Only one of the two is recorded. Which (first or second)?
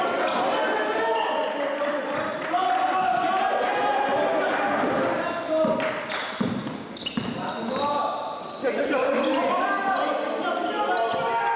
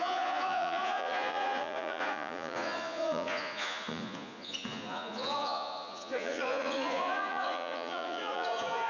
first